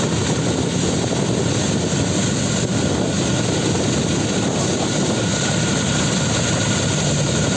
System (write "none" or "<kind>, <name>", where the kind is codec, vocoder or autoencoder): none